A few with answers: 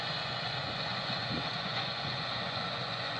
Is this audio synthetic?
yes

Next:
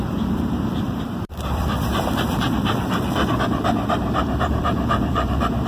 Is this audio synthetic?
yes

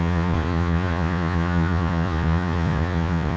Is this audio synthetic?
yes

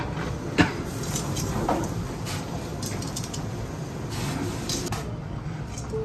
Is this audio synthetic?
no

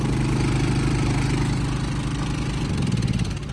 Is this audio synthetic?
no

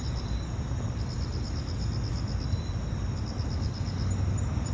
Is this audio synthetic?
no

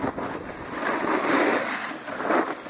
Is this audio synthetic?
no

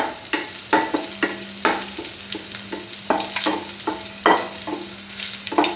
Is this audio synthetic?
no